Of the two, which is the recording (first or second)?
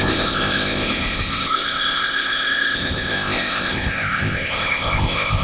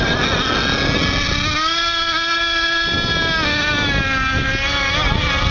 second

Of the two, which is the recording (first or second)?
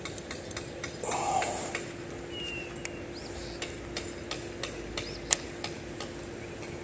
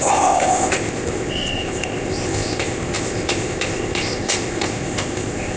first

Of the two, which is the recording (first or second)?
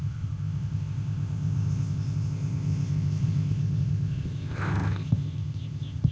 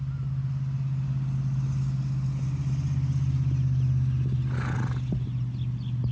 second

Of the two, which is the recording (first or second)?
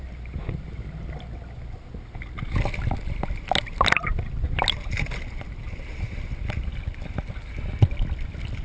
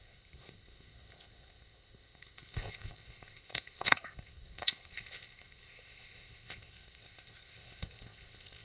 first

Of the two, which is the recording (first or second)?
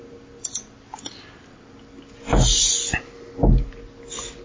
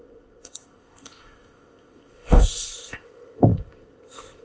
first